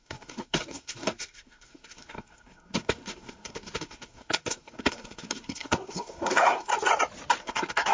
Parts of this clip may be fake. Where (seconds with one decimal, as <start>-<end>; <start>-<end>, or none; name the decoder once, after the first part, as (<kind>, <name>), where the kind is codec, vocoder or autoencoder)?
0.0-6.7 (codec, SNAC); 7.4-7.9

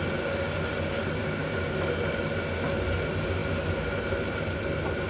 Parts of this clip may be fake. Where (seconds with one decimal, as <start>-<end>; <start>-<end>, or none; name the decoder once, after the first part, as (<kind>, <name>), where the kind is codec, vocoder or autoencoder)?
none

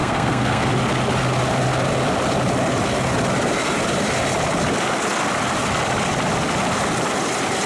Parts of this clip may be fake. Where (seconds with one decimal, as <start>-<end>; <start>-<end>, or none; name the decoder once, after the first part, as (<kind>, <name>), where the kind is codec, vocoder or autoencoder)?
0.0-0.7 (codec, SNAC)